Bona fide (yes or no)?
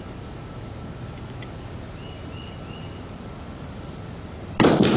yes